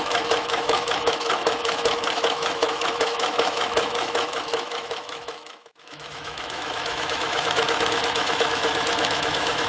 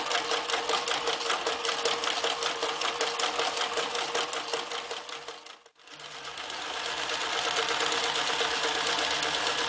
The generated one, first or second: first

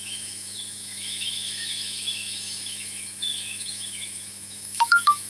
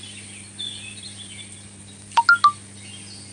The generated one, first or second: first